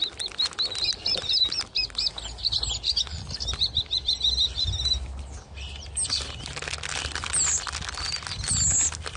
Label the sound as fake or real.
real